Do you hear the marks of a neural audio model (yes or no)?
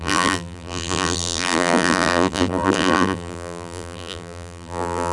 yes